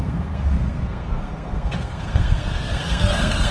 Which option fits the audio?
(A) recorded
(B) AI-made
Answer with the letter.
B